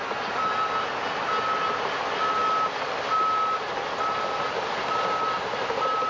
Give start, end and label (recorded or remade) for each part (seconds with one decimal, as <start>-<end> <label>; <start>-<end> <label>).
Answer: 0.0-6.1 recorded